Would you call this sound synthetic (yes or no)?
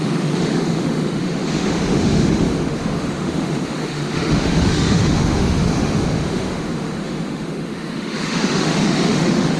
yes